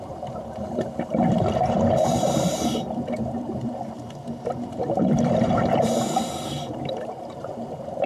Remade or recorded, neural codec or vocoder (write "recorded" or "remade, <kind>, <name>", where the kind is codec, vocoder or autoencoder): remade, vocoder, BigVGAN v2